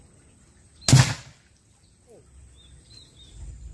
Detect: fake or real real